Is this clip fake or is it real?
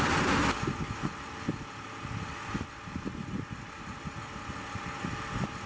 real